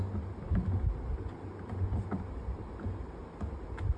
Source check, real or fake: real